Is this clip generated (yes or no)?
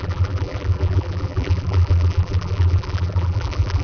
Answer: yes